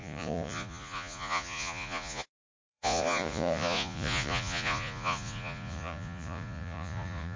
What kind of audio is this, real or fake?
fake